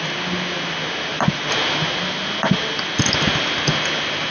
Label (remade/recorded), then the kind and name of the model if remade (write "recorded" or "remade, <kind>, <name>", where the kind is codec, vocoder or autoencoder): recorded